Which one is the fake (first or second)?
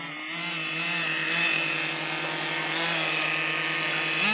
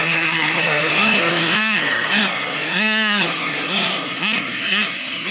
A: second